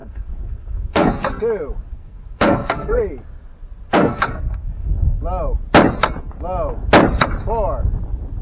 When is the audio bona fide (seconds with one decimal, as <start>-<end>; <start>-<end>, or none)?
1.4-1.9; 3.0-3.9; 5.2-8.4